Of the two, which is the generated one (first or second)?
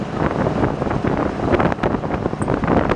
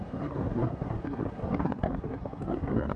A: second